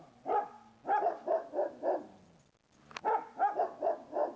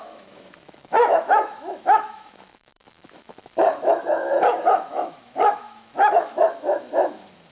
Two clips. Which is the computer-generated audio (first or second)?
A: second